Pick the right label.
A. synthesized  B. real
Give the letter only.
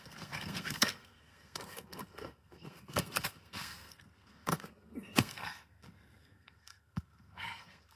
A